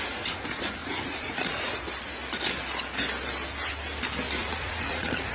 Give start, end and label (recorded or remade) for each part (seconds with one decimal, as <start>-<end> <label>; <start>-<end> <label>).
0.0-0.8 recorded; 0.8-1.7 remade; 1.7-4.4 recorded; 4.4-5.3 remade